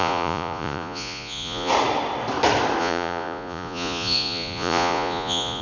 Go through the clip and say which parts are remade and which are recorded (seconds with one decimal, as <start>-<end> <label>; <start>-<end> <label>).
0.0-1.7 remade; 1.7-2.8 recorded; 2.8-5.6 remade